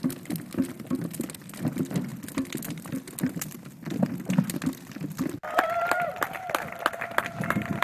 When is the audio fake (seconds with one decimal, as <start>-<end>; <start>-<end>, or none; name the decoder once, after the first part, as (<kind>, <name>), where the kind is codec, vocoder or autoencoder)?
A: none